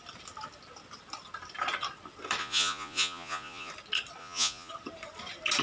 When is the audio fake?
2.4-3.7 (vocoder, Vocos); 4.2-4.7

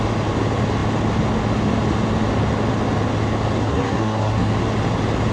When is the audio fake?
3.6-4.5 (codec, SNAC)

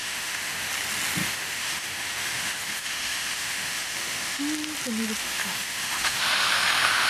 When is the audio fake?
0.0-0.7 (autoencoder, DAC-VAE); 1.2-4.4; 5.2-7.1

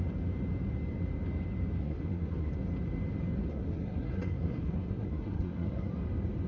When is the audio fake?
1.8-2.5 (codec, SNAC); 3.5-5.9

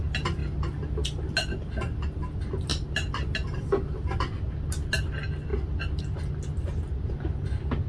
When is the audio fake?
none

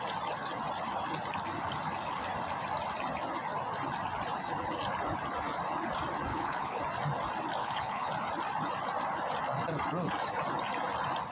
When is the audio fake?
6.3-6.8 (codec, HILCodec); 7.6-8.1

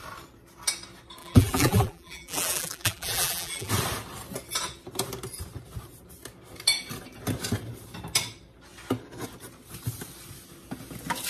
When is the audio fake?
1.2-3.7 (vocoder, BigVGAN v2)

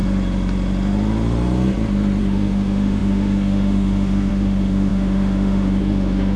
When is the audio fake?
2.2-6.4 (autoencoder, DAC-VAE)